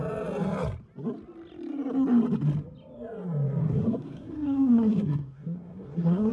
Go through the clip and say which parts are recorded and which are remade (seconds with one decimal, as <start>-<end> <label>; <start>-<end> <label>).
0.0-3.6 recorded; 3.6-6.3 remade